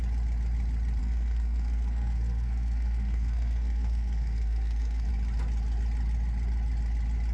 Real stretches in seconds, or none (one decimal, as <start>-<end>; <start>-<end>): 0.0-1.0; 5.1-7.3